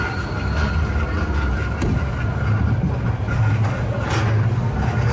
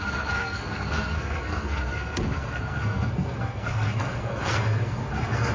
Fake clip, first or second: second